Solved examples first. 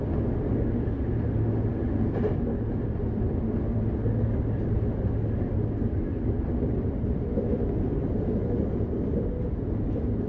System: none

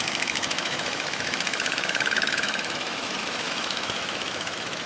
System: autoencoder, DAC-VAE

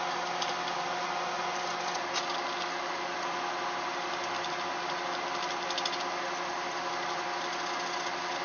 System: none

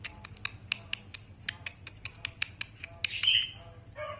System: none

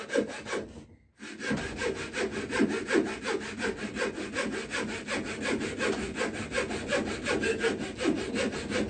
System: none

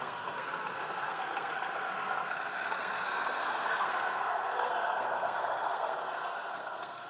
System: codec, SNAC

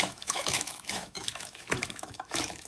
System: autoencoder, DAC-VAE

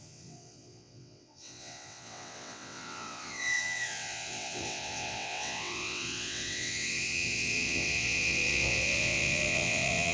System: vocoder, WaveNeXt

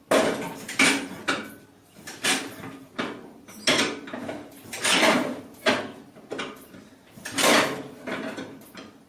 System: none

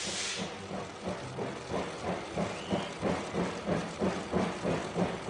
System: none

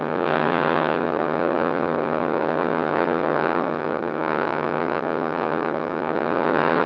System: vocoder, HiFi-GAN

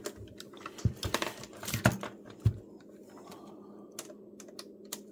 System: none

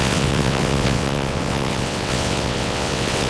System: vocoder, WaveNeXt